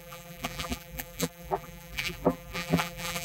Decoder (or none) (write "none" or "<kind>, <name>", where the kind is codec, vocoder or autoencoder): vocoder, BigVGAN v2